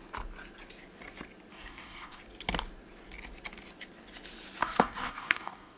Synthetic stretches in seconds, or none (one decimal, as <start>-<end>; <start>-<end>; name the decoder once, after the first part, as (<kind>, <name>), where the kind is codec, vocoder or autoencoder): 1.5-2.2 (codec, DAC); 4.6-5.8